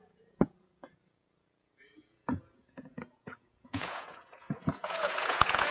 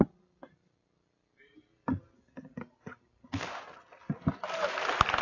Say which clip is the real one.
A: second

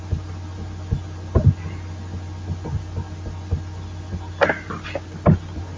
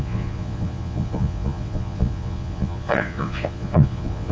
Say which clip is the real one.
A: first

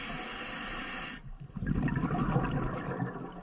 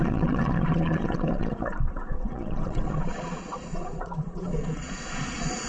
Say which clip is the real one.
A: first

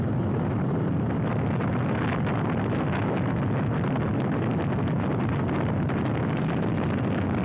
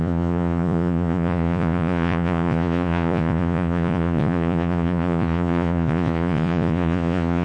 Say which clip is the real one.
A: first